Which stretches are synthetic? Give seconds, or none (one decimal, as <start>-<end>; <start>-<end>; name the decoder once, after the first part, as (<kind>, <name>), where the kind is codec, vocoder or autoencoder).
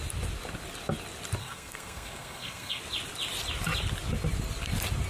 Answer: 1.4-2.8 (codec, SNAC)